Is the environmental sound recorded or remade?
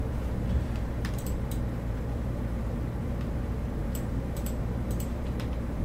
remade